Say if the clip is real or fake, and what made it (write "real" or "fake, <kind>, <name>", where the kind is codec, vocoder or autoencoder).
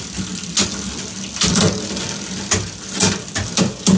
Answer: real